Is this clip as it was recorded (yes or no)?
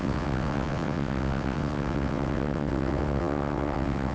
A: no